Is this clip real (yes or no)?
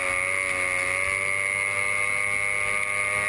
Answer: yes